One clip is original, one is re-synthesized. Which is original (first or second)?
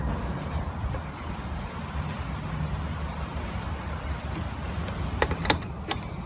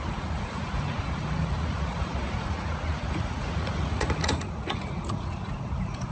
first